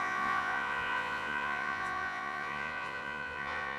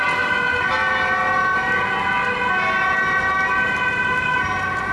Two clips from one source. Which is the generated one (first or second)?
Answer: first